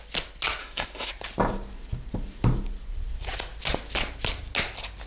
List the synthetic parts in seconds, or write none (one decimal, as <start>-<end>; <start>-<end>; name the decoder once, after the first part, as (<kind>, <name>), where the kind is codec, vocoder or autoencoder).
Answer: 0.6-1.1 (autoencoder, DAC-VAE)